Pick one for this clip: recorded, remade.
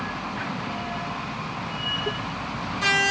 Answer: recorded